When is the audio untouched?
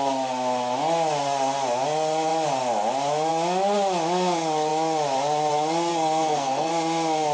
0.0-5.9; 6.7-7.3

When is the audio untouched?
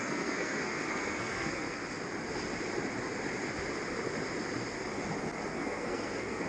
1.8-5.5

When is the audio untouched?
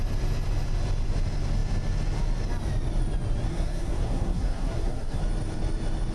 0.0-3.5; 5.2-6.1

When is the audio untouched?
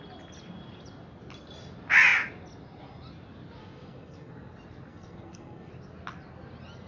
0.0-3.6; 4.3-4.9; 5.7-6.9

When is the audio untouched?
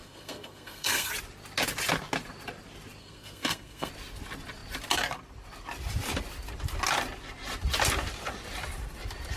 1.1-3.0; 3.9-9.4